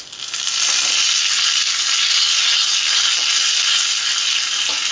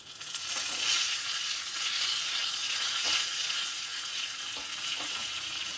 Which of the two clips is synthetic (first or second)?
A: second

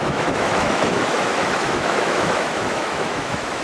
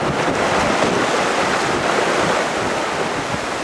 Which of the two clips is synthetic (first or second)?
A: first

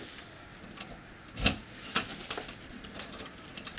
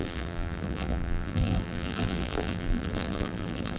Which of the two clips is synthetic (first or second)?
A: second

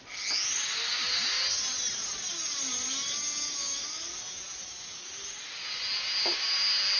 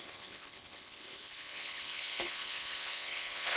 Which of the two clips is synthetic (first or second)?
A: second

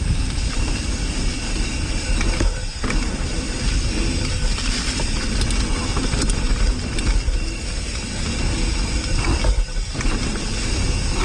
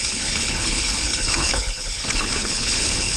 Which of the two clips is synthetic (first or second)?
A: second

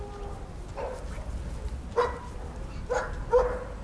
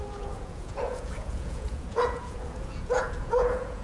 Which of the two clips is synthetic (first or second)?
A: second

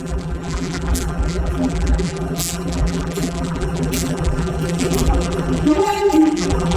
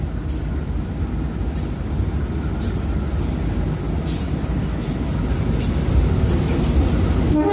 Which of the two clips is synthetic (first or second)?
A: first